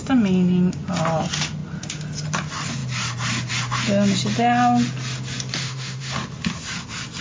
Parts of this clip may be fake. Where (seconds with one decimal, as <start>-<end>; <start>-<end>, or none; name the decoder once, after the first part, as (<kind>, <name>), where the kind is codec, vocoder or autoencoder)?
5.6-6.1 (autoencoder, DAC-VAE)